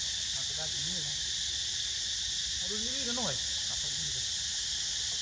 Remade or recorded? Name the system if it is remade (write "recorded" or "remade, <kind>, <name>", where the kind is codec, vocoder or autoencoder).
recorded